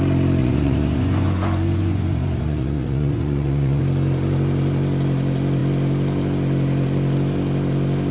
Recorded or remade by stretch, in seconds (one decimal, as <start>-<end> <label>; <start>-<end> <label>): 0.0-0.4 recorded; 0.4-3.8 remade; 3.8-8.1 recorded